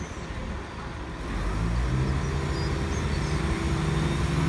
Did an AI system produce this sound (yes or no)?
no